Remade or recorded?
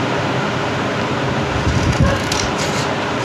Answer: remade